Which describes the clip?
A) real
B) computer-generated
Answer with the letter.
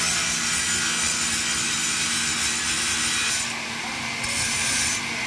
A